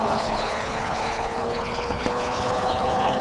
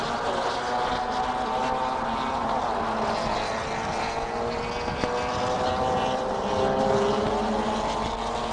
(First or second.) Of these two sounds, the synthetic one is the first